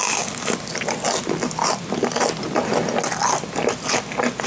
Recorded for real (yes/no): yes